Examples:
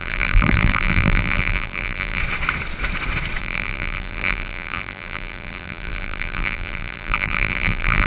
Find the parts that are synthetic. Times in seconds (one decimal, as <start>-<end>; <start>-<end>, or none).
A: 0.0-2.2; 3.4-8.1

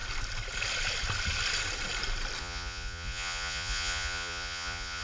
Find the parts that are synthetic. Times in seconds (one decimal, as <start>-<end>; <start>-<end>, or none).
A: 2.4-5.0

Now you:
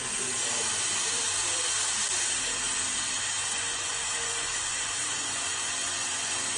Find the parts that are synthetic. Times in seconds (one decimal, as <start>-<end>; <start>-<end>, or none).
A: 3.4-6.6

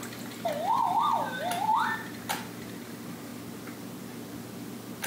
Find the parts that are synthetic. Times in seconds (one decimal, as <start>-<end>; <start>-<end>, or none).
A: none

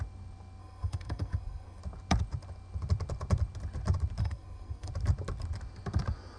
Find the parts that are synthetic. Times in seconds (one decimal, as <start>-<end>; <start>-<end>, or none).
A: 0.6-1.8; 4.2-4.9

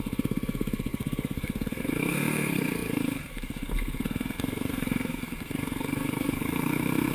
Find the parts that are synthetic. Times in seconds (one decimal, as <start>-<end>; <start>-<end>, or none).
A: 0.0-7.1